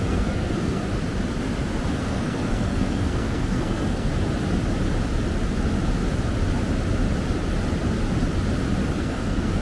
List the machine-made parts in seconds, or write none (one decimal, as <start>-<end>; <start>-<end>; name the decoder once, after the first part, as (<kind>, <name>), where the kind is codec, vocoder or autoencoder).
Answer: 0.0-0.8 (codec, SNAC); 2.0-4.1; 9.0-9.6